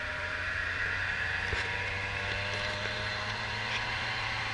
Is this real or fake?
fake